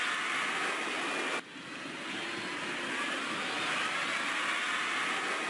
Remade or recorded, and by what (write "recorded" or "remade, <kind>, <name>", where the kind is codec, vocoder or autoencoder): recorded